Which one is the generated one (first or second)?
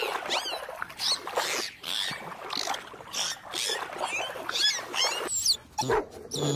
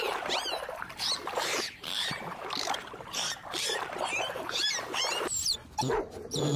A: second